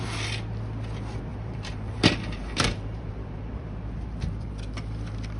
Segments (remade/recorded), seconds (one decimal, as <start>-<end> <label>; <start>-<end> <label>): 0.0-1.3 recorded; 1.3-4.5 remade; 4.5-5.4 recorded